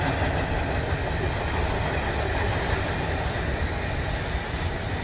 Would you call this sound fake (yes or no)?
no